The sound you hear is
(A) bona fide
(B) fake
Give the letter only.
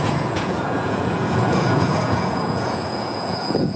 B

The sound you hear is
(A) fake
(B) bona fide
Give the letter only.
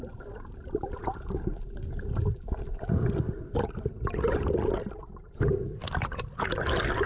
B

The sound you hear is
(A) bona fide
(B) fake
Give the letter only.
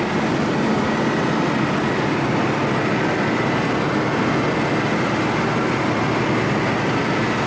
A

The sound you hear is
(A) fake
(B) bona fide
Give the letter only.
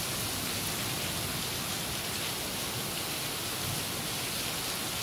B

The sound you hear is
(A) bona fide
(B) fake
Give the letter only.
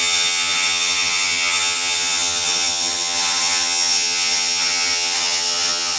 B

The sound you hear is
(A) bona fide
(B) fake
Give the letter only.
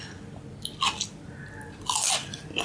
A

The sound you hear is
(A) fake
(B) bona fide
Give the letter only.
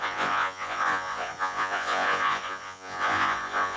A